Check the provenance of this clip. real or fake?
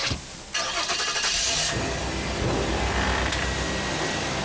real